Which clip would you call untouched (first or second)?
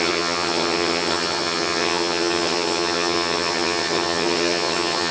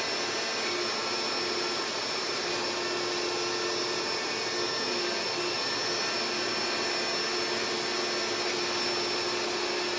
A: second